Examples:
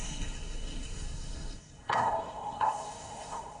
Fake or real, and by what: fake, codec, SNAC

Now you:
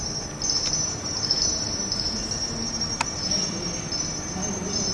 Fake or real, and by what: real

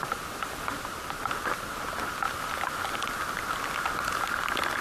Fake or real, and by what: real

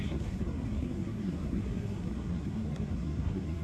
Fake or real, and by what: fake, codec, SNAC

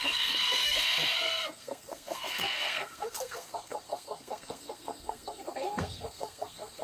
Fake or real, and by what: fake, codec, SNAC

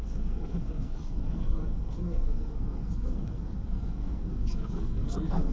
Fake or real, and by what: fake, codec, SNAC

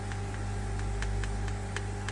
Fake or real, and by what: real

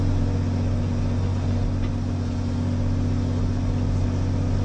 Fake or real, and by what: real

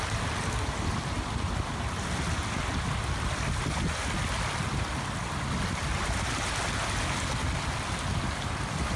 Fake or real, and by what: real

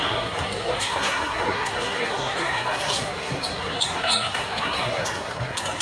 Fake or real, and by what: fake, codec, SNAC